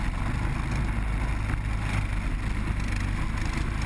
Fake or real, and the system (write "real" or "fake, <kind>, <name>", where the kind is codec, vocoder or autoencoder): real